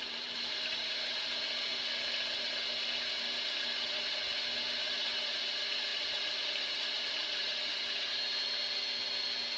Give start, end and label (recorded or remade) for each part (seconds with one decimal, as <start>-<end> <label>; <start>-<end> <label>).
0.0-0.8 remade; 0.8-4.8 recorded; 4.8-5.5 remade; 5.5-5.9 recorded; 5.9-8.1 remade; 8.1-9.6 recorded

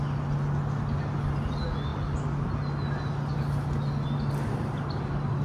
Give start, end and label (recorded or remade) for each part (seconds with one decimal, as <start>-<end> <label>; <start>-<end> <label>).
0.0-5.4 recorded

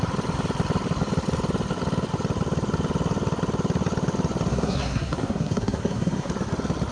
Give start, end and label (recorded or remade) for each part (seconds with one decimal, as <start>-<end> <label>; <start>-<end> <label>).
0.0-4.5 recorded; 4.5-6.3 remade; 6.3-6.9 recorded

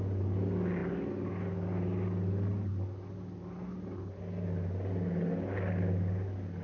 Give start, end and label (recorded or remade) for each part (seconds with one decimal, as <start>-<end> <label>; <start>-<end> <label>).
0.0-6.6 recorded

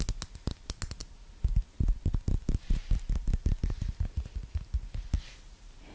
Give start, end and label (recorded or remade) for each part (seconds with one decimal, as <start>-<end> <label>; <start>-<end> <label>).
0.0-5.9 recorded

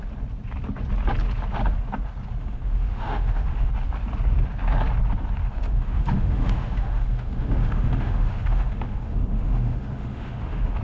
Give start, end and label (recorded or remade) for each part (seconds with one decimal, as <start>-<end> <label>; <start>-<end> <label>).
0.0-2.4 recorded; 2.4-3.7 remade; 3.7-5.4 recorded; 5.4-10.8 remade